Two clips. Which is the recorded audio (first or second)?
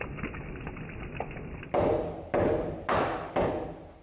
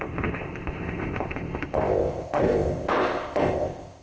first